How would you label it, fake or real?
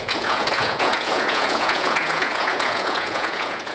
fake